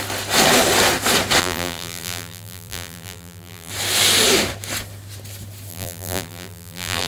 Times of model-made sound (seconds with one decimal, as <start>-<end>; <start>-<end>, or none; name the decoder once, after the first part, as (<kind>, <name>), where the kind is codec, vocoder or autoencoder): 1.4-3.7 (vocoder, BigVGAN v2); 5.7-7.1